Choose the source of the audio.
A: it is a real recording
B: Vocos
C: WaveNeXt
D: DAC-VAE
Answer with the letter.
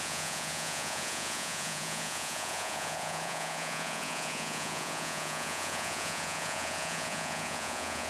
B